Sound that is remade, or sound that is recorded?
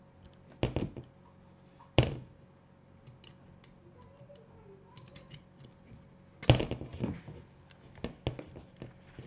recorded